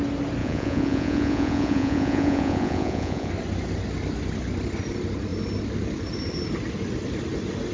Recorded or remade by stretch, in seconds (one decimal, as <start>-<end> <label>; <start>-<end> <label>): 0.0-0.4 recorded; 0.4-3.3 remade; 3.3-7.7 recorded